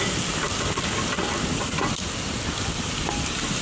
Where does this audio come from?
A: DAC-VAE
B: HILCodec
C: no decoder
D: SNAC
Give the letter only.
C